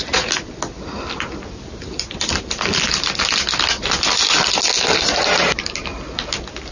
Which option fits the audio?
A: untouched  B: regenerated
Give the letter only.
A